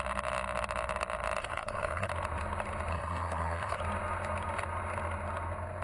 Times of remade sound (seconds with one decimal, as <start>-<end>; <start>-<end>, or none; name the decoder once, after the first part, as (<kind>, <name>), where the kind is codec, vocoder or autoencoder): 1.4-2.1 (codec, SNAC); 2.9-3.8